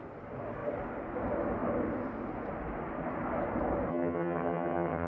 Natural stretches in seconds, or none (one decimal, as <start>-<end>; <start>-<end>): 0.0-3.9